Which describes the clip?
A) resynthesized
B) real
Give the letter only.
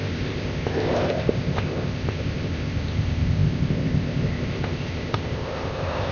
A